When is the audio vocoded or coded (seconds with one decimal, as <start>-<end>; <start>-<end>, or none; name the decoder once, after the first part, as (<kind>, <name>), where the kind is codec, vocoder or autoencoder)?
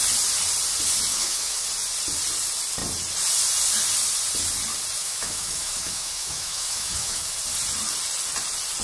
1.1-1.6 (autoencoder, DAC-VAE); 5.0-7.4